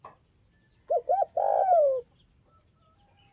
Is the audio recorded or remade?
recorded